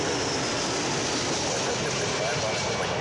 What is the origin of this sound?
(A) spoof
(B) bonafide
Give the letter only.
B